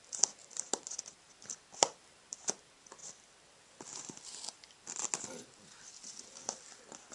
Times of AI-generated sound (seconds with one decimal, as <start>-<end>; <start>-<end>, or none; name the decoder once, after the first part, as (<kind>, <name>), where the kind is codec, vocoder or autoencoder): 0.4-0.9 (vocoder, BigVGAN v2)

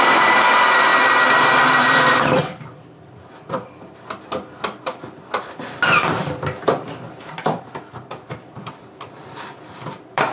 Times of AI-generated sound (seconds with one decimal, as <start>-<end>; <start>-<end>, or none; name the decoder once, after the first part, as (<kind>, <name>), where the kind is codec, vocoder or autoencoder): 0.0-0.9 (vocoder, BigVGAN v2); 1.6-10.3

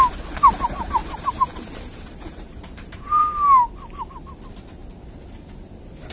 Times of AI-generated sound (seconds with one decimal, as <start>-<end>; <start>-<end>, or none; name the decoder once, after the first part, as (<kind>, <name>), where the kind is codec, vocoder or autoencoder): 1.0-3.2 (vocoder, BigVGAN v2)

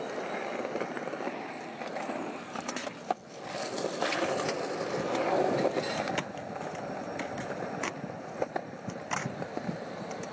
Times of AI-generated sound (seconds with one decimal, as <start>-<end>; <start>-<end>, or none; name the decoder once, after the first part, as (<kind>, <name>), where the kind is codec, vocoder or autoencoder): 7.3-9.3 (vocoder, BigVGAN v2)

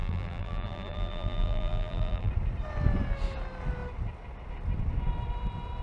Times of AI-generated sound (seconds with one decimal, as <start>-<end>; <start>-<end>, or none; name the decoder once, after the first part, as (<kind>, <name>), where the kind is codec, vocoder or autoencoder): 0.0-2.3 (vocoder, BigVGAN v2)

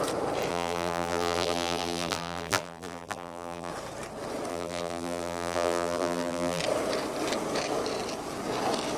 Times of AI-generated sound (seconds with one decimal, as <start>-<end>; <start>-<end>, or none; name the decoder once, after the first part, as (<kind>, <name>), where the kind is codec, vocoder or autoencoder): 0.5-3.7 (vocoder, BigVGAN v2); 4.5-6.6

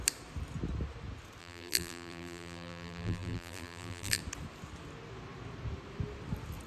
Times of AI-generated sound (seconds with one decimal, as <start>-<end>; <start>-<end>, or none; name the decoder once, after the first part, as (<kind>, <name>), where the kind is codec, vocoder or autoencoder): 1.4-4.2 (vocoder, BigVGAN v2)

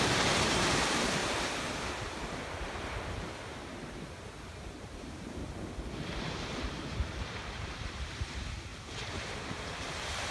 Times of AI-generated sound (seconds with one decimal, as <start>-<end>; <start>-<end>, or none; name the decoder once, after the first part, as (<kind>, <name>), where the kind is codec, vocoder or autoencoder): 0.0-1.2 (vocoder, BigVGAN v2); 3.2-5.4; 6.2-10.3